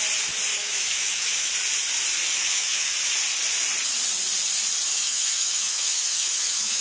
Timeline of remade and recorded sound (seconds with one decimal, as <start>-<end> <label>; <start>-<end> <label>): 0.0-0.5 recorded; 0.5-1.5 remade; 1.5-2.3 recorded; 2.3-2.9 remade; 2.9-4.9 recorded; 4.9-6.8 remade